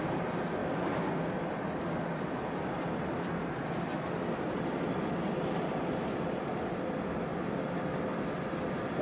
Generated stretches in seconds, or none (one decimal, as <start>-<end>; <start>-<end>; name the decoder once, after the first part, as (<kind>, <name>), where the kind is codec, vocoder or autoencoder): none